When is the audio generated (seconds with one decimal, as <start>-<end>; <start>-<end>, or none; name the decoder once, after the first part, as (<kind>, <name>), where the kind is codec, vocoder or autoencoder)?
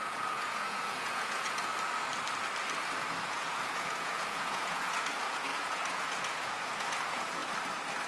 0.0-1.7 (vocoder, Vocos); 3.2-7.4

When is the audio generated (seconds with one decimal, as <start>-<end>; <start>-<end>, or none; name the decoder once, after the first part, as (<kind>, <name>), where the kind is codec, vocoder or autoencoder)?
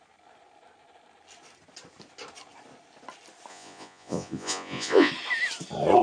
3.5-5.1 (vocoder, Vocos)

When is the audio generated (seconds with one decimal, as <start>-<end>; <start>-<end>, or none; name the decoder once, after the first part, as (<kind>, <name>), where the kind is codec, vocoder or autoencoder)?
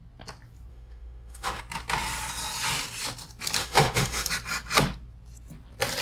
0.7-1.6 (autoencoder, DAC-VAE); 3.6-4.3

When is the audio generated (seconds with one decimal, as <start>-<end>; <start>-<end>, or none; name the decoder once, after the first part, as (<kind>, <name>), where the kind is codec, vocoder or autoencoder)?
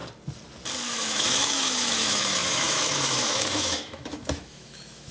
0.8-5.1 (autoencoder, DAC-VAE)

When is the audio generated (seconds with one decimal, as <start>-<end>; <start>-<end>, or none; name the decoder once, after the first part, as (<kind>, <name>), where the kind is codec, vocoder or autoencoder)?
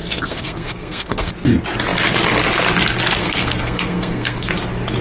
0.0-1.3 (codec, SNAC); 3.2-4.5